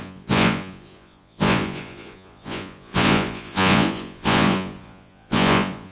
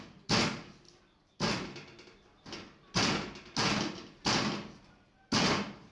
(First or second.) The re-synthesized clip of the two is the first